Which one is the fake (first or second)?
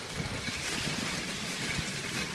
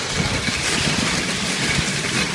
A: first